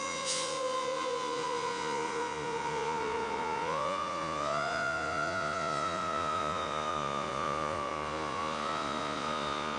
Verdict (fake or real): fake